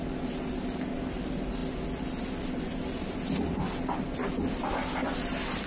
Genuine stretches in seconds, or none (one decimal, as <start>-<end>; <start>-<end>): 0.0-5.7